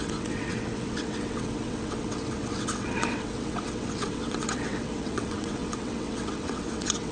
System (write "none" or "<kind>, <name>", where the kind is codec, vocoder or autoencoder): vocoder, WaveNeXt